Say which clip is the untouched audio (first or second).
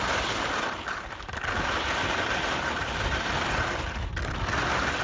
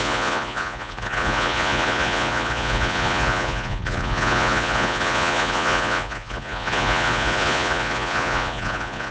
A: first